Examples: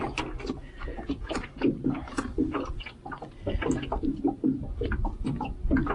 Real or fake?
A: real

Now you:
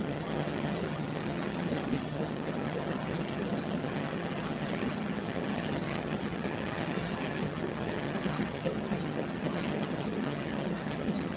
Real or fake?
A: fake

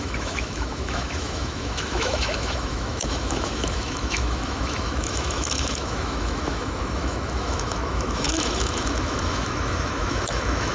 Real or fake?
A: fake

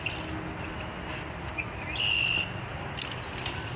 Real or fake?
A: real